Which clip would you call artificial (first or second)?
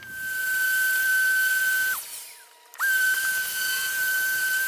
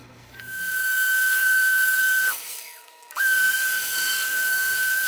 second